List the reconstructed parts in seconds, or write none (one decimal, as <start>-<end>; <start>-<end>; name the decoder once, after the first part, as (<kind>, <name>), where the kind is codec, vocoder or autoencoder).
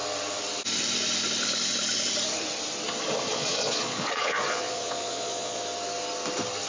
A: 3.3-5.6 (vocoder, Vocos)